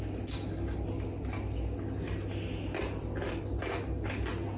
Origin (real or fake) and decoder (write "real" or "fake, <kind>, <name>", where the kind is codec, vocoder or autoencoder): real